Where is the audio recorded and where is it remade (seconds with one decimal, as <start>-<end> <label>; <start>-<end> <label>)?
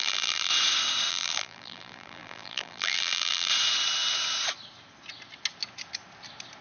0.0-0.5 remade; 0.5-1.1 recorded; 1.1-3.5 remade; 3.5-6.6 recorded